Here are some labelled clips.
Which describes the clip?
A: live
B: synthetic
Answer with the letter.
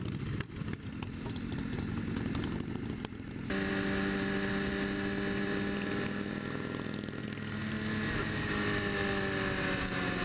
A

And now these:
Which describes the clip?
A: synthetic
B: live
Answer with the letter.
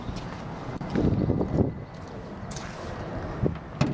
B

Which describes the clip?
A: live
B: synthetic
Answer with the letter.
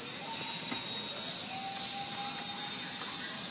A